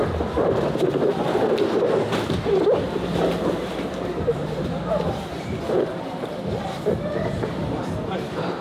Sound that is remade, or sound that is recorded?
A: remade